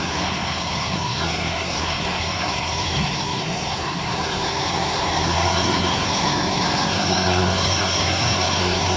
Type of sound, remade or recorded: remade